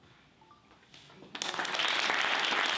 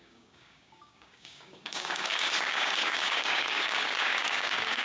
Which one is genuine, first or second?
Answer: first